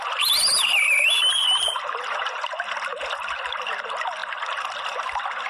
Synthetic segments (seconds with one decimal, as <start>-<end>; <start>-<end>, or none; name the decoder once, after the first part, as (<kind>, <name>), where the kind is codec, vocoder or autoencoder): none